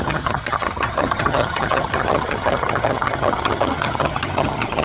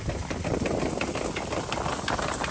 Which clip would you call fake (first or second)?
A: first